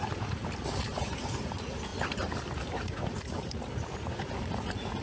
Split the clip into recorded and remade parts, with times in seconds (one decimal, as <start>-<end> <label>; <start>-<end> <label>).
0.0-5.0 recorded